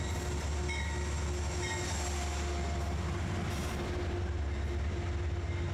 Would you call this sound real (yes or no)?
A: yes